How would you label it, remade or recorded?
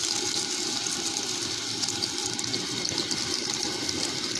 recorded